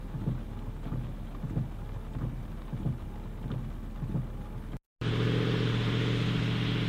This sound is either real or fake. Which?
real